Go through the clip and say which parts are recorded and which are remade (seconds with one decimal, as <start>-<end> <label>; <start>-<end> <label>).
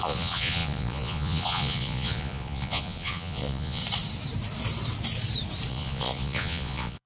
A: 0.0-3.8 remade; 3.8-5.7 recorded; 5.7-7.1 remade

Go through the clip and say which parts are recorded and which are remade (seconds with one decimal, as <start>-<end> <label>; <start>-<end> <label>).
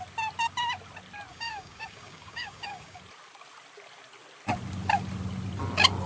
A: 0.0-1.3 recorded; 1.3-3.0 remade; 3.0-6.1 recorded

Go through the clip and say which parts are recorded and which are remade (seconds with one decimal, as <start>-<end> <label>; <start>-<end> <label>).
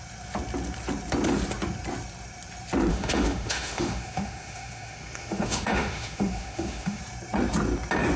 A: 0.0-2.9 recorded; 2.9-7.0 remade; 7.0-8.2 recorded